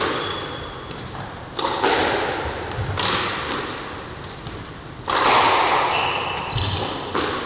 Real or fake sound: real